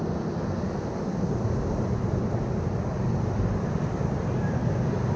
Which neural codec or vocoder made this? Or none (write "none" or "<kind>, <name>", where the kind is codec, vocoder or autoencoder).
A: none